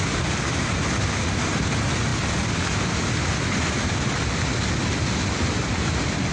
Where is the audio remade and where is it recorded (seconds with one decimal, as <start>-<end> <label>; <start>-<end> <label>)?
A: 0.0-6.3 recorded